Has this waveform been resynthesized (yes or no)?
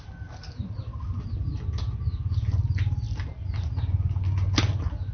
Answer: no